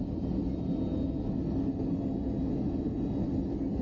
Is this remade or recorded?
recorded